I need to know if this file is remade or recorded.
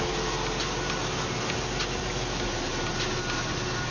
recorded